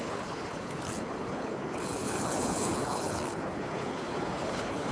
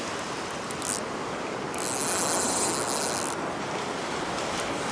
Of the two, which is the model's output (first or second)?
first